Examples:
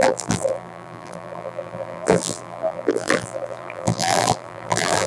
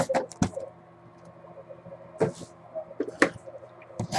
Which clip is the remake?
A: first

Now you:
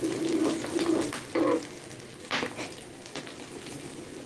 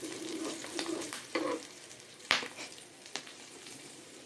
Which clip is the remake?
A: second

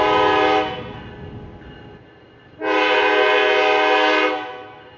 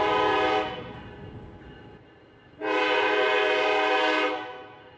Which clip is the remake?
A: second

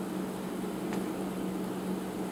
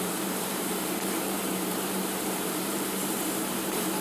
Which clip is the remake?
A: second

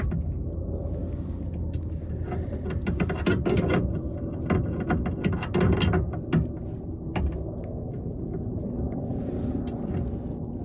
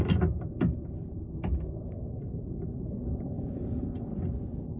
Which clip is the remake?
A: second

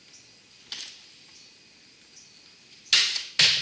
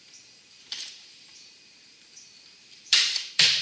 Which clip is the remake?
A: second